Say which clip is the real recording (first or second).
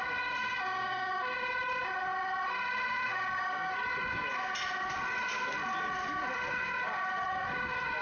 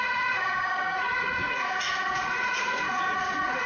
first